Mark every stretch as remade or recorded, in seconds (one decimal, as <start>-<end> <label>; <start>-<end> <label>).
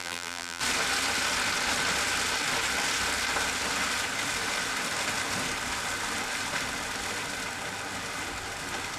0.0-0.6 remade; 0.6-9.0 recorded